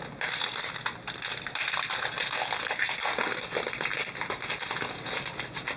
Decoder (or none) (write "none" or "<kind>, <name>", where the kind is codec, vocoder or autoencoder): none